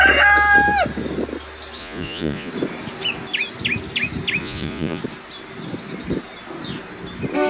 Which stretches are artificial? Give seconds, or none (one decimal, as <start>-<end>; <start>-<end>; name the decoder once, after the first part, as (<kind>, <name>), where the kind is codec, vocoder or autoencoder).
1.8-2.5 (vocoder, Vocos); 4.4-5.0